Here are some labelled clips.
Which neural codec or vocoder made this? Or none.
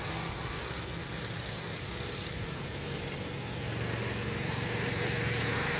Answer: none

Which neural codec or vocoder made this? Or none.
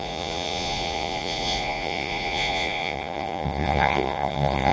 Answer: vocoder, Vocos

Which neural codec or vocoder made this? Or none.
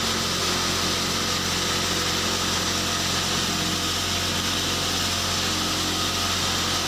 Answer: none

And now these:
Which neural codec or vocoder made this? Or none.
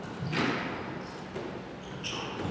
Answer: none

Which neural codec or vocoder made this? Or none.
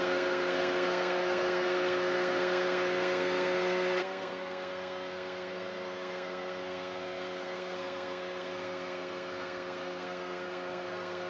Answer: codec, SNAC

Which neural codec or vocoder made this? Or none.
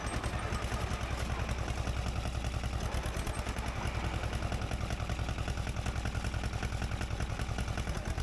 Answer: none